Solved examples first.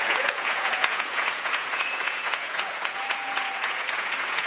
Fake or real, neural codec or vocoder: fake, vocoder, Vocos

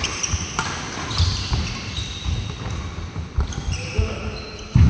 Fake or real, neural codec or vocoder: real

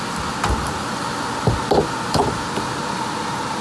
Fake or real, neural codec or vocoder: real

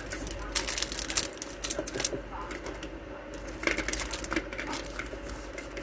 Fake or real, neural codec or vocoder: real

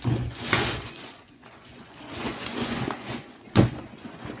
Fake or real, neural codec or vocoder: fake, vocoder, Vocos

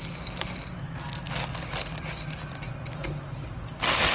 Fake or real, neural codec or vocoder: real